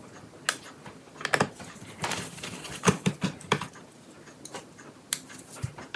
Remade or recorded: recorded